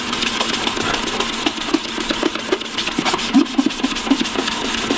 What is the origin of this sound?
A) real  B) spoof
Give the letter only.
B